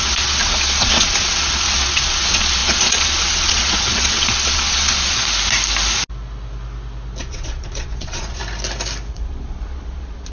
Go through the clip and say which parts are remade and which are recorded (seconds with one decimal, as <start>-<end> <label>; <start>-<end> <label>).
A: 0.0-5.2 remade; 5.2-7.2 recorded; 7.2-8.4 remade; 8.4-9.1 recorded; 9.1-10.3 remade